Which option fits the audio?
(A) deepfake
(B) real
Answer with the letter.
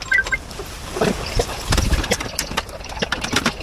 B